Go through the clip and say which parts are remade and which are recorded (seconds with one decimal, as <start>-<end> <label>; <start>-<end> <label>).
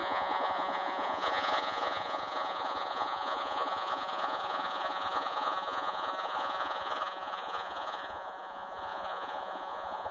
0.0-10.1 remade